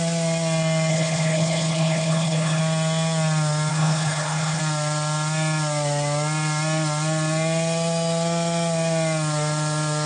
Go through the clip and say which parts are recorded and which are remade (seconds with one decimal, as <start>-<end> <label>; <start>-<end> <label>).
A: 0.0-0.9 recorded; 0.9-2.6 remade; 2.6-3.7 recorded; 3.7-4.6 remade; 4.6-10.1 recorded